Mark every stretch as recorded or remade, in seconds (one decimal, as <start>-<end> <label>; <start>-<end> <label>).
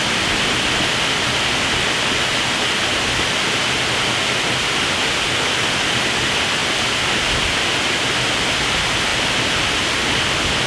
0.0-10.7 recorded